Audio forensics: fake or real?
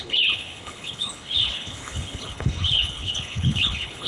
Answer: fake